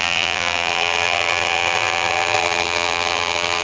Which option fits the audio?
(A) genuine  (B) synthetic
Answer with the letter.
B